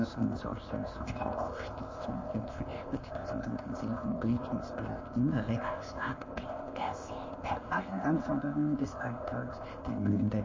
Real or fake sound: fake